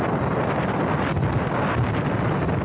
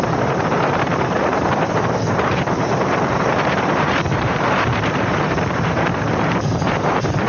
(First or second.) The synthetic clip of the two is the second